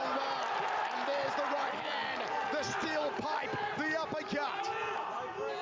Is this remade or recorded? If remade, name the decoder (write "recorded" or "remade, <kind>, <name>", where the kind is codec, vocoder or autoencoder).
recorded